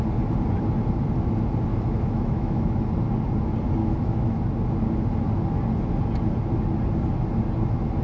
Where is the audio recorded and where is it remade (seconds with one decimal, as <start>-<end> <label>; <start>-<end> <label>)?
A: 0.0-1.7 recorded; 1.7-2.8 remade; 2.8-3.8 recorded; 3.8-4.3 remade; 4.3-8.0 recorded